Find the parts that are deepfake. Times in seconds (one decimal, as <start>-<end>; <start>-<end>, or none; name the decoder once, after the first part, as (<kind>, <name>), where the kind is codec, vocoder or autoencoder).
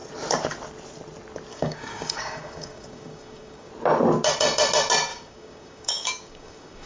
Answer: 1.5-3.7 (codec, DAC); 5.1-6.9